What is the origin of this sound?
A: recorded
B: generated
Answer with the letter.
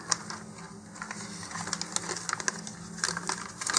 A